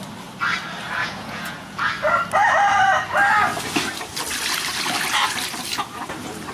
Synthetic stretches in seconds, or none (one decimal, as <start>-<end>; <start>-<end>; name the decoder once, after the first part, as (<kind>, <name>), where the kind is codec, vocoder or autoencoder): 1.0-1.9 (vocoder, Vocos)